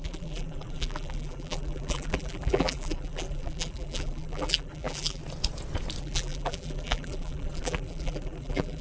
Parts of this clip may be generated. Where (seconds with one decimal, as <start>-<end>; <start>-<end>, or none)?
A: 0.0-5.2; 6.0-8.8